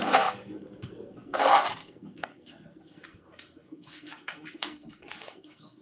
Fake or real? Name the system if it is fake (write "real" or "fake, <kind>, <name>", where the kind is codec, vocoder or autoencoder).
fake, codec, SNAC